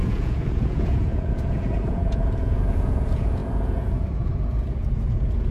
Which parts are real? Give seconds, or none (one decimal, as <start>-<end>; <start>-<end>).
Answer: none